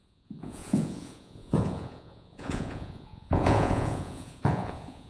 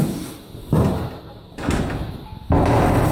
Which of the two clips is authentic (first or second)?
second